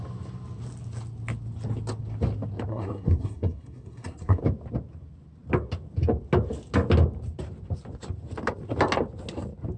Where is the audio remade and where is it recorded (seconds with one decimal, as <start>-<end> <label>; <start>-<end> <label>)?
0.0-2.7 recorded; 2.7-4.4 remade; 4.4-9.8 recorded